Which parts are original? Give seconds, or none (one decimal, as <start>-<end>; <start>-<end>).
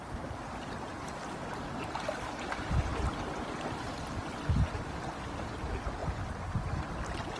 0.0-7.4